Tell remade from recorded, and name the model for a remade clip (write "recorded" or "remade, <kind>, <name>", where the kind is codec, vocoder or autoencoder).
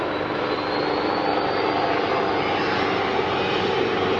recorded